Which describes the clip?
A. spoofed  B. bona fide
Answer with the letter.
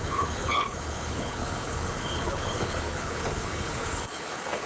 A